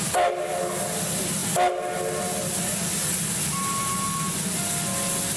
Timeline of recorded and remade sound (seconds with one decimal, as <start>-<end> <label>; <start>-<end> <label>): 0.0-5.4 recorded